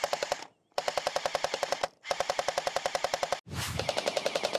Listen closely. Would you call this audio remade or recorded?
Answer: recorded